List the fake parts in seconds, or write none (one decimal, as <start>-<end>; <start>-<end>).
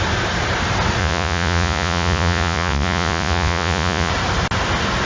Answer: 1.0-4.1